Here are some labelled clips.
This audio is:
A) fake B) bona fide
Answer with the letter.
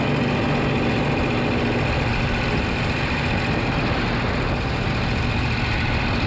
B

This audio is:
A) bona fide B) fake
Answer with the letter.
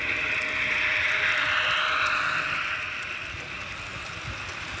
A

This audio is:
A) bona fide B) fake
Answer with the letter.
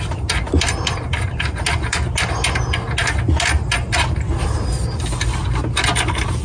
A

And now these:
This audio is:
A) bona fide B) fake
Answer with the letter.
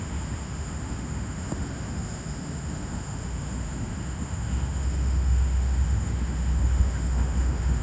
B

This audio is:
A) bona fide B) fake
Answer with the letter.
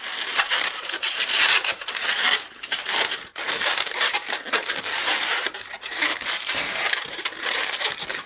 B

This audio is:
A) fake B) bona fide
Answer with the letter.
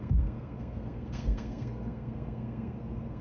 A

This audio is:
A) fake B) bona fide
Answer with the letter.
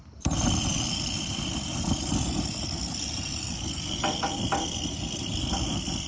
B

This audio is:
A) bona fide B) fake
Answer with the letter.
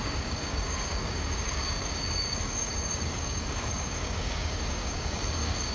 B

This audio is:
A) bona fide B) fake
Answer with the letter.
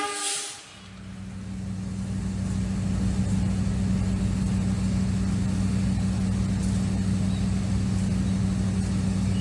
A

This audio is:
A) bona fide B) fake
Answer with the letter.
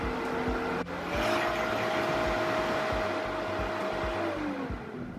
A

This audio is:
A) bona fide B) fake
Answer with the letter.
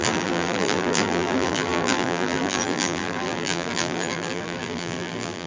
B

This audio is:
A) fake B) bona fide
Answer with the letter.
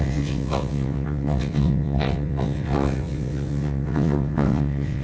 A